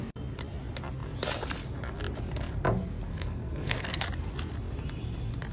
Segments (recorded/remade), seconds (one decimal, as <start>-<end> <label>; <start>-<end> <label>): 0.0-3.1 recorded; 3.1-4.0 remade; 4.0-5.5 recorded